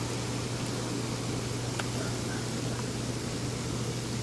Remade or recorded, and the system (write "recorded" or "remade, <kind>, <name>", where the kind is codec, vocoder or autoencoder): recorded